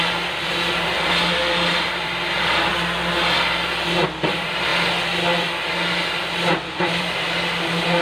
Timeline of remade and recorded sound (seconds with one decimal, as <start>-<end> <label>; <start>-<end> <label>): 0.0-2.7 remade; 2.7-4.3 recorded; 4.3-4.7 remade; 4.7-6.5 recorded; 6.5-8.0 remade